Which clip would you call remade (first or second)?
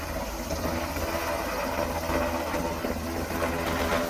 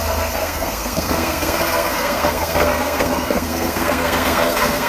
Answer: second